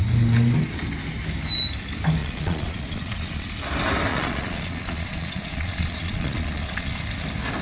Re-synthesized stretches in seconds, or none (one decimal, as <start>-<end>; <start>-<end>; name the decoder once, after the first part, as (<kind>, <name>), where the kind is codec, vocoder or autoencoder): 2.2-3.5 (vocoder, Vocos); 4.1-7.0